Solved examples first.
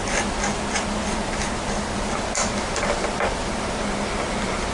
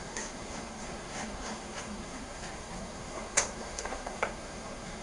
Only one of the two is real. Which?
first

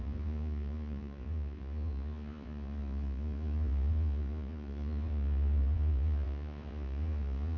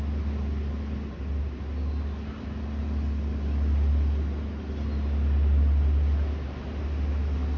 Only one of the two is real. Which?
second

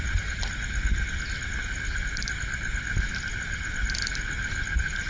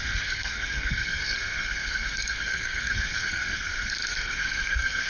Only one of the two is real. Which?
first